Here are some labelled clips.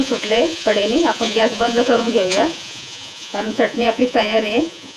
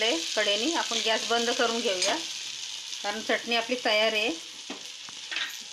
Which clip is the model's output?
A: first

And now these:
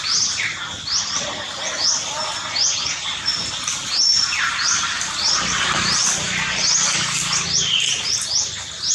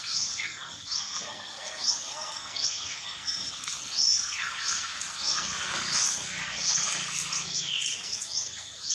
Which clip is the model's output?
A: second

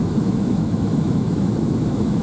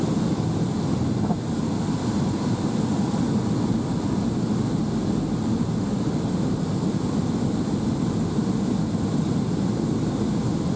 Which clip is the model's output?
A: first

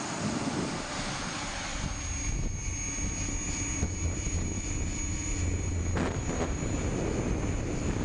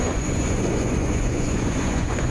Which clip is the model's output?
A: second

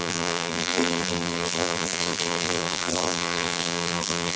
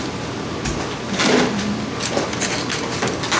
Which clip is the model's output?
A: first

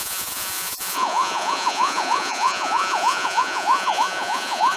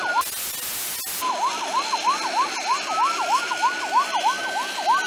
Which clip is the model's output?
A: first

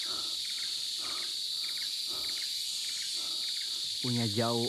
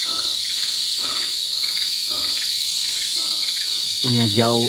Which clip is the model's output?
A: second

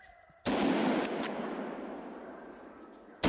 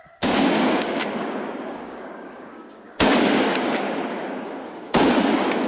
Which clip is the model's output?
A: second